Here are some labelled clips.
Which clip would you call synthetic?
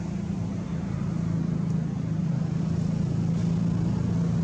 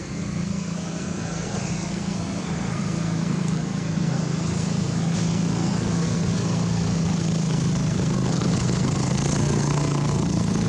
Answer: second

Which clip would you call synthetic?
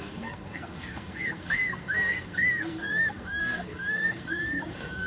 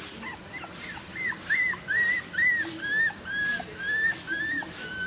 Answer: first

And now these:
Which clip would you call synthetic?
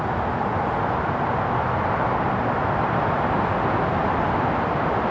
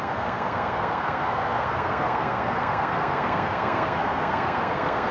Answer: second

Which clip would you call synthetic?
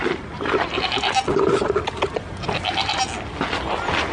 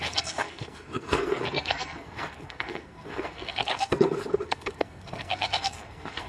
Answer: second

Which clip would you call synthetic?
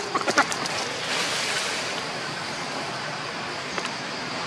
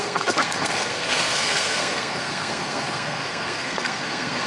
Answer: second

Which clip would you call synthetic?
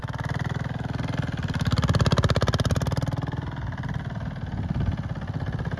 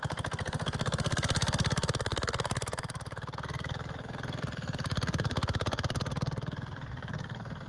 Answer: second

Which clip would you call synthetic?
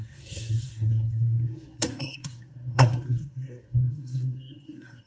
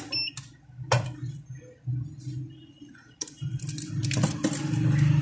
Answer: first